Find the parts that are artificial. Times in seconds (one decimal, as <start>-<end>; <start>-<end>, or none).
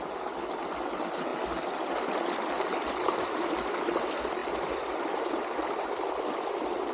none